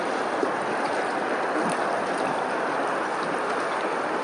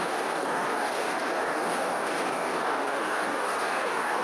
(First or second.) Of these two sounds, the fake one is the second